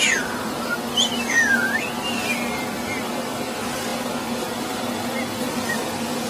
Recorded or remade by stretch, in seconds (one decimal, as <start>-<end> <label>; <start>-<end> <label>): 0.0-6.3 recorded